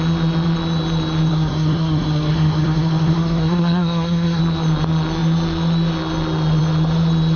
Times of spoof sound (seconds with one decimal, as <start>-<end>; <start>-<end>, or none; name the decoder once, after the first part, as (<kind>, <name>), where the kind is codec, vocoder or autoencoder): 1.3-4.4 (codec, SNAC)